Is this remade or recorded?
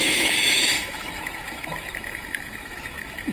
remade